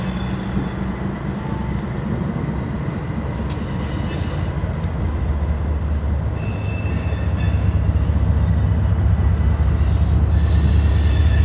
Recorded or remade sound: recorded